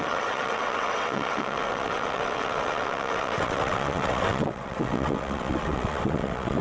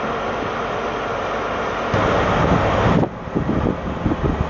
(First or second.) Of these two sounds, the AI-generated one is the first